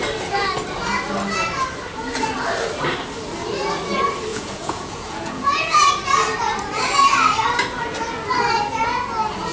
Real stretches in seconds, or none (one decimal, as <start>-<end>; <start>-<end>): 0.0-4.3; 5.9-9.5